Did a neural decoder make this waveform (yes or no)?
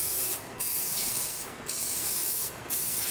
yes